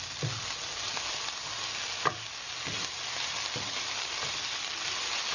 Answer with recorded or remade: recorded